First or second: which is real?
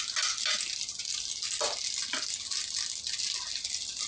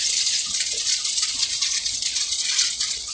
first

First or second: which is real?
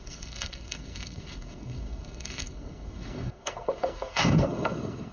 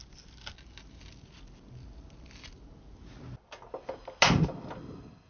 second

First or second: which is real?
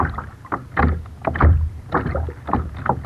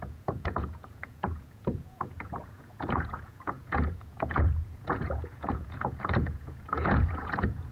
first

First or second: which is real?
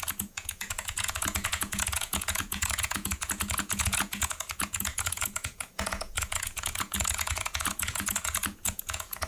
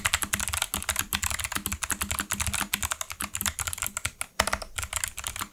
second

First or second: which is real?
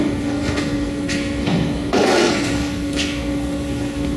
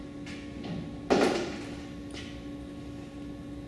second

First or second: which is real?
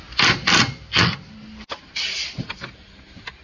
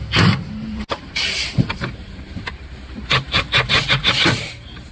first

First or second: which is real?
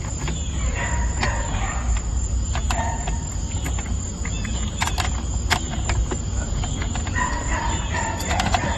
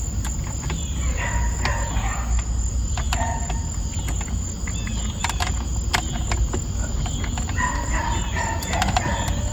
second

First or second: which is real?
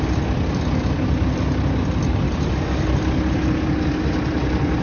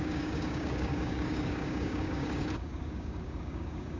first